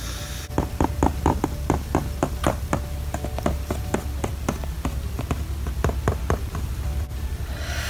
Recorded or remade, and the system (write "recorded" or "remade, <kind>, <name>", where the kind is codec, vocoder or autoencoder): recorded